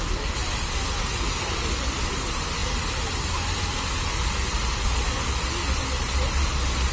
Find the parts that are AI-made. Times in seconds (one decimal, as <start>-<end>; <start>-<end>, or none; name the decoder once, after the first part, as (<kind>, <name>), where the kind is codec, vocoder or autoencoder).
0.4-1.5 (vocoder, BigVGAN v2)